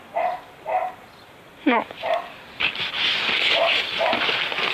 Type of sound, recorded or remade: recorded